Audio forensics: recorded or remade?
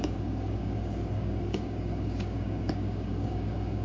remade